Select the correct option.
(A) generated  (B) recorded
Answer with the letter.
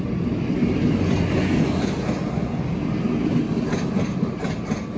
B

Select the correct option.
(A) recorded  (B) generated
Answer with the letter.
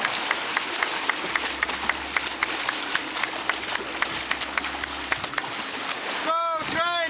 A